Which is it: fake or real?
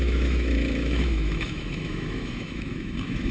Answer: fake